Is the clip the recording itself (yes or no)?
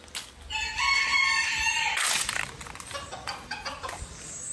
yes